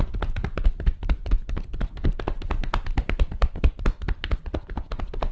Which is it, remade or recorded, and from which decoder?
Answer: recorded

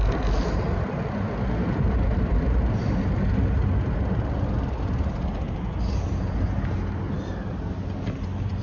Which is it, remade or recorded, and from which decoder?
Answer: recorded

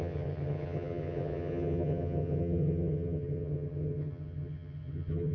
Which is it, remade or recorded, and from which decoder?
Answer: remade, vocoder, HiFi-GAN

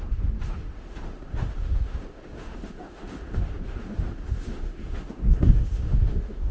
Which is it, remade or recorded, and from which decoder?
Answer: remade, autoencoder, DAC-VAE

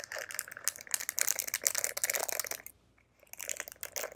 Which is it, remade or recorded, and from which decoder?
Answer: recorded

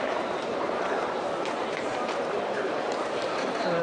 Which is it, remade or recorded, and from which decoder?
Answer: remade, vocoder, BigVGAN v2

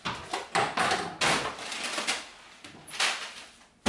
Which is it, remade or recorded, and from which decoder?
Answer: recorded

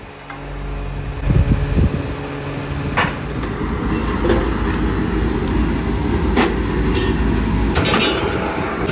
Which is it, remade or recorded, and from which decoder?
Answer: recorded